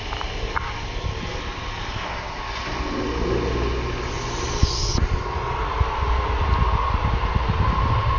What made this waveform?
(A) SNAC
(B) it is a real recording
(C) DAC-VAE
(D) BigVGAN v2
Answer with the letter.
B